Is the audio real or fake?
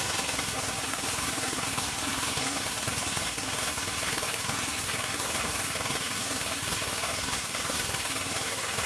fake